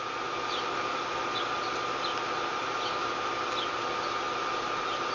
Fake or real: real